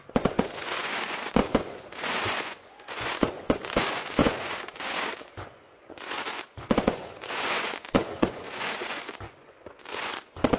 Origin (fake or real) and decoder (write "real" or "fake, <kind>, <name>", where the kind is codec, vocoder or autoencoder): fake, vocoder, Vocos